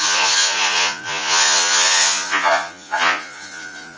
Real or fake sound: fake